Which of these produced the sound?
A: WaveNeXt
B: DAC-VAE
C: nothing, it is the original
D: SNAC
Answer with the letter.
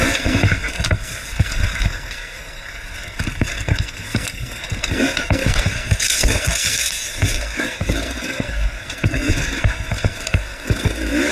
D